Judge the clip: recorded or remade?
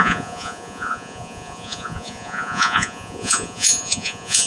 remade